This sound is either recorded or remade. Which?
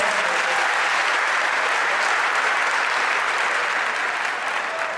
recorded